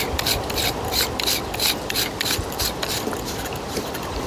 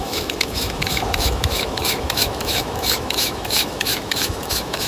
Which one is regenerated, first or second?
second